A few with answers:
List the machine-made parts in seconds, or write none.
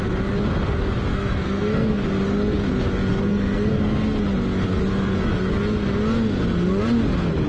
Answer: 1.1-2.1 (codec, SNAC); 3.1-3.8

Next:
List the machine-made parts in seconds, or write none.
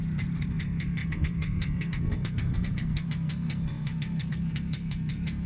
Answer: 0.5-5.5 (codec, SNAC)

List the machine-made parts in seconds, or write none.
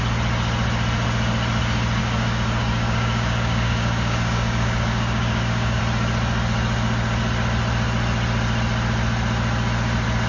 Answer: 2.0-5.8 (codec, DAC)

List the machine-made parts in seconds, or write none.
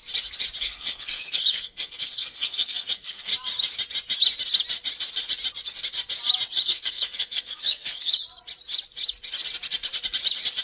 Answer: 0.6-3.3 (codec, SNAC); 6.6-8.1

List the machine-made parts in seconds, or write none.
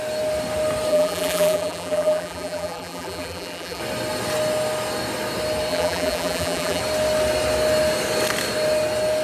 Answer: 0.9-3.8 (vocoder, BigVGAN v2); 5.7-6.8